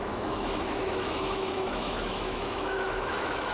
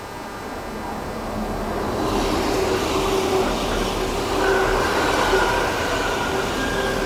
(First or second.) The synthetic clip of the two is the first